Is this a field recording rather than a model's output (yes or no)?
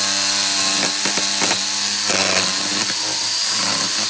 yes